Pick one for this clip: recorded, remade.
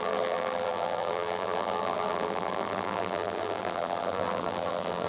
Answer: remade